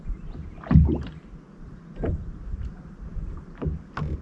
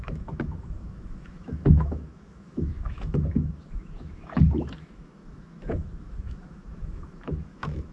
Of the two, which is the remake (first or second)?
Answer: second